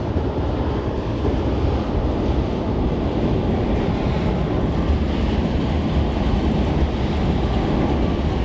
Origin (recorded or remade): recorded